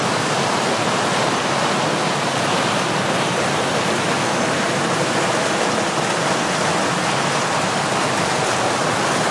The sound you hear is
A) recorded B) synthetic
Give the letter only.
A